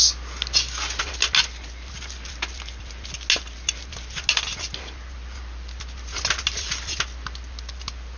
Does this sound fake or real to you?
real